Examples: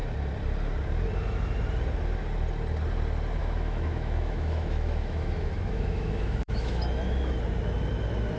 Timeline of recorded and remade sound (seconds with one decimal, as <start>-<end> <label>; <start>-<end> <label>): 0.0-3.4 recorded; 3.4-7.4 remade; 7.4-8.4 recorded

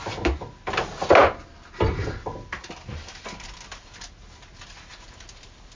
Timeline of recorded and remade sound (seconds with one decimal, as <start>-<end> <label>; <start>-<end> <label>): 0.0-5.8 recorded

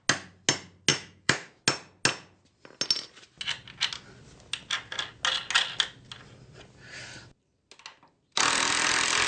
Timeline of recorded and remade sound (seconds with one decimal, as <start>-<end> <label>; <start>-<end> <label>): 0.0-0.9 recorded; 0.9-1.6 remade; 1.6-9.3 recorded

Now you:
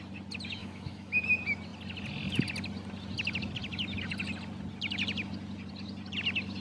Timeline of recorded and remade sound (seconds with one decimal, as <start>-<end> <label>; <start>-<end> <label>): 0.0-0.6 recorded; 0.6-1.2 remade; 1.2-6.6 recorded

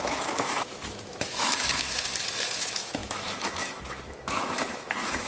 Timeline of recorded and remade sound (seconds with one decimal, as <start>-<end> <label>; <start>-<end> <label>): 0.0-5.3 remade

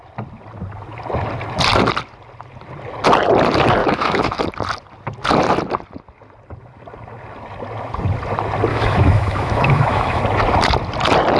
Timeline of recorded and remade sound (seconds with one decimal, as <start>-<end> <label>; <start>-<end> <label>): 0.0-3.8 recorded; 3.8-4.4 remade; 4.4-8.7 recorded; 8.7-10.2 remade; 10.2-11.4 recorded

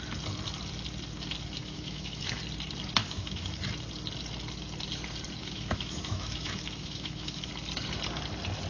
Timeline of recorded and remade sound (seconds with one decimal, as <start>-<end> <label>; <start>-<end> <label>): 0.0-1.6 recorded; 1.6-2.4 remade; 2.4-3.0 recorded; 3.0-3.6 remade; 3.6-5.4 recorded; 5.4-7.5 remade; 7.5-8.7 recorded

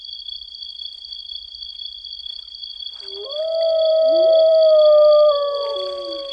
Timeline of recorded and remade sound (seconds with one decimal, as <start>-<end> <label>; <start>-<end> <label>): 0.0-6.3 recorded